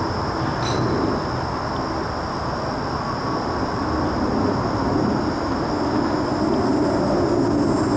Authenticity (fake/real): real